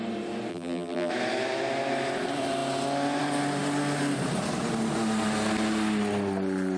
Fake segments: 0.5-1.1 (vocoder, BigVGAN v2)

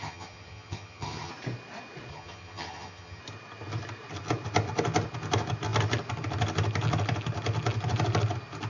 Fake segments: 0.0-1.3 (vocoder, HiFi-GAN); 2.1-3.2

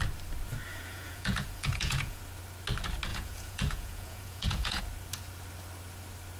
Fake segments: 0.7-2.2 (vocoder, Vocos); 3.1-4.8

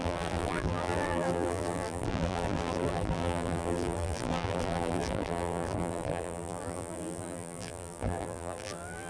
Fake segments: 0.0-9.1 (vocoder, BigVGAN v2)

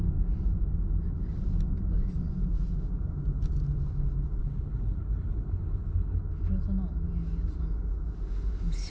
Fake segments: 4.4-6.2 (codec, HILCodec)

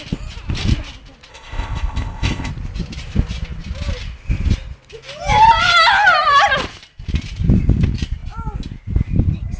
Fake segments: 1.3-2.5 (codec, ZipCodec)

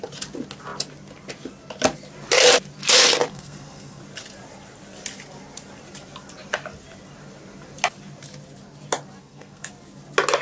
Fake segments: 3.3-4.0 (codec, SNAC); 9.2-9.7

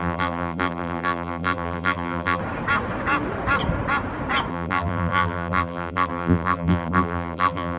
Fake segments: 0.0-2.4 (vocoder, BigVGAN v2); 4.5-7.8